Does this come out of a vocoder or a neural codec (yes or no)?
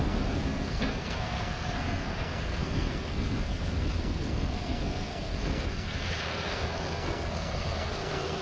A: yes